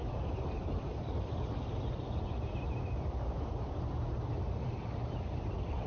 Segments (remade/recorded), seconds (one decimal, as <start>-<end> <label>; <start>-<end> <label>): 0.0-5.9 remade